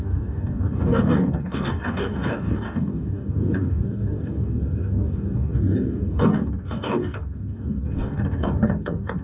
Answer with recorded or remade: remade